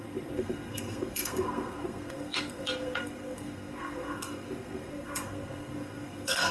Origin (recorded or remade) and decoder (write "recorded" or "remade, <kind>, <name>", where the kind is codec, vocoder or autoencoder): remade, codec, SNAC